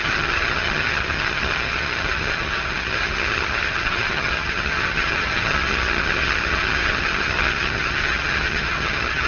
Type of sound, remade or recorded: remade